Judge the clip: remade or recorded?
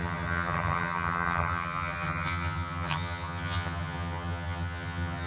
remade